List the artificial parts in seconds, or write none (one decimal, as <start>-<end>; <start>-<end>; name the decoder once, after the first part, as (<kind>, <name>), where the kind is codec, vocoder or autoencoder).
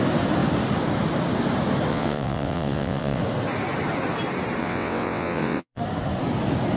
1.9-3.2 (vocoder, WaveNeXt); 4.6-5.8